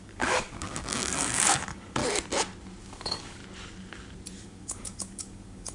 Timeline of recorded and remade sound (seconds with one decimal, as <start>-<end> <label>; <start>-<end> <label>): 0.0-2.0 remade; 2.0-2.8 recorded; 2.8-3.4 remade; 3.4-4.4 recorded; 4.4-5.7 remade